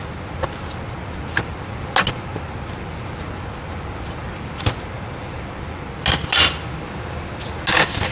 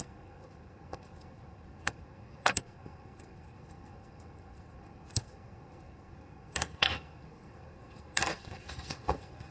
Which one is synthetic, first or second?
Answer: second